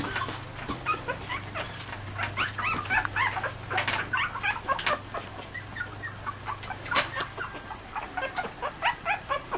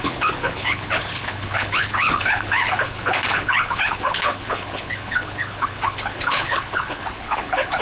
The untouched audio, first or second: first